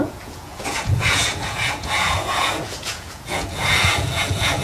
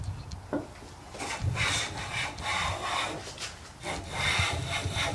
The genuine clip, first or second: second